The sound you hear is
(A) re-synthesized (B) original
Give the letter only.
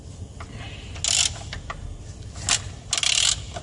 B